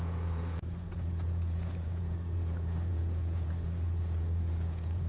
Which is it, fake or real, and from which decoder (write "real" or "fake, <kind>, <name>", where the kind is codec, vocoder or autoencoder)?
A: fake, vocoder, Vocos